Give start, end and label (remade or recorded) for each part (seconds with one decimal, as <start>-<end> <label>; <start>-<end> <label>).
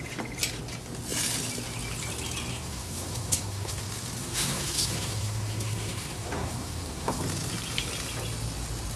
0.0-2.5 recorded; 2.5-3.8 remade; 3.8-4.2 recorded; 4.2-7.2 remade; 7.2-9.0 recorded